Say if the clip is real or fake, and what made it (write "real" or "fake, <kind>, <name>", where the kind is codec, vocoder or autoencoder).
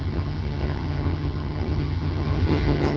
fake, vocoder, HiFi-GAN